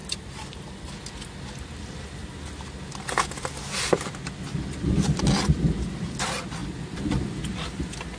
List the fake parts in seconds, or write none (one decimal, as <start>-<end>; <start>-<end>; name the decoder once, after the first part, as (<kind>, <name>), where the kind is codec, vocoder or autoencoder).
none